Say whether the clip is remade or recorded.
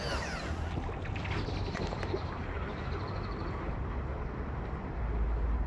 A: recorded